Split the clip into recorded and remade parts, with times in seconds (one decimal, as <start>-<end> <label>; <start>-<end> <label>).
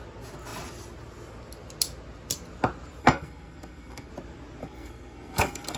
0.0-3.0 recorded; 3.0-4.1 remade; 4.1-4.6 recorded; 4.6-5.8 remade